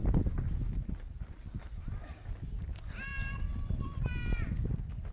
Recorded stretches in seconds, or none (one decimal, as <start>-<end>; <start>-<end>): 2.7-5.1